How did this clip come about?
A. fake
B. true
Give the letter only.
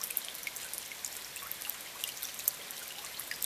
B